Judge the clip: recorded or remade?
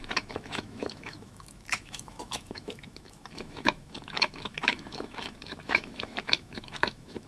remade